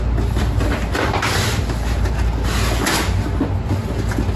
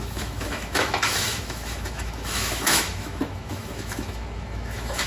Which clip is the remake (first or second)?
second